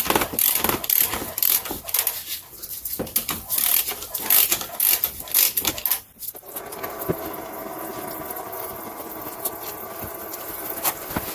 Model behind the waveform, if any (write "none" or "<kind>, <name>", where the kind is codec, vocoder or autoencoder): none